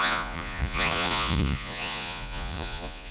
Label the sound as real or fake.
fake